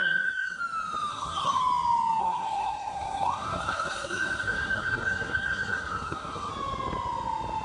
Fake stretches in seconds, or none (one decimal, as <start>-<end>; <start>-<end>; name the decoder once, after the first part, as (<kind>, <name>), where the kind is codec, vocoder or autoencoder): 0.0-0.6 (codec, SNAC); 1.1-1.6; 2.2-6.5